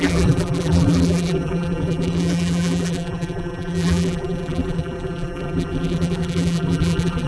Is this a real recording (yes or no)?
no